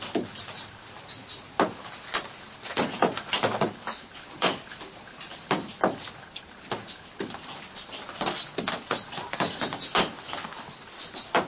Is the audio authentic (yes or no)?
yes